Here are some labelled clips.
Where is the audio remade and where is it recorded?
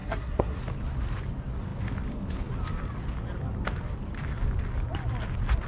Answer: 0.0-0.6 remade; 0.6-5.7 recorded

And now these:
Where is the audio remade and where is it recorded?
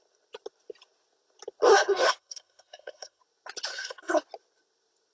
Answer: 0.0-1.7 recorded; 1.7-3.2 remade; 3.2-3.7 recorded; 3.7-4.2 remade; 4.2-5.1 recorded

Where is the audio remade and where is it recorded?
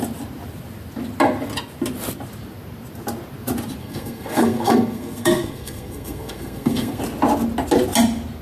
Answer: 0.0-3.8 recorded; 3.8-7.0 remade; 7.0-8.4 recorded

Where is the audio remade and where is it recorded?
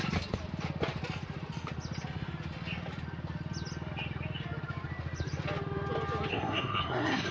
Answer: 0.0-6.3 recorded; 6.3-7.3 remade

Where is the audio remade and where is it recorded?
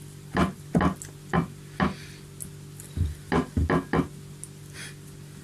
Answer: 0.0-5.4 recorded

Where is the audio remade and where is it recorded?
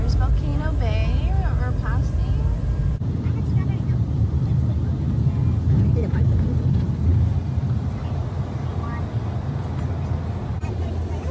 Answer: 0.0-11.3 recorded